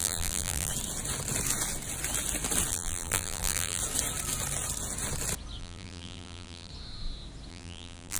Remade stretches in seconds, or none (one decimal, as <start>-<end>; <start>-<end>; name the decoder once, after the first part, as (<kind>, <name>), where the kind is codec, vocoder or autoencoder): 0.0-0.7 (vocoder, BigVGAN v2); 2.7-3.8; 5.6-6.7; 7.5-8.2